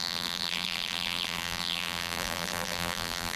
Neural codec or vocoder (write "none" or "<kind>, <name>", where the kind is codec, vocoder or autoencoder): vocoder, BigVGAN v2